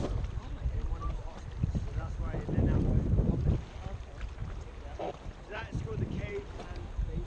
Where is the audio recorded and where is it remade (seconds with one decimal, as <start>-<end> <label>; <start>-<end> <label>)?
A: 0.0-0.4 recorded; 0.4-1.6 remade; 1.6-4.4 recorded; 4.4-6.3 remade; 6.3-7.3 recorded